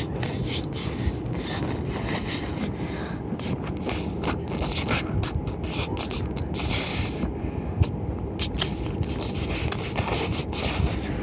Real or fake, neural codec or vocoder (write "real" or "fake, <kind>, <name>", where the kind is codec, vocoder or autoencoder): real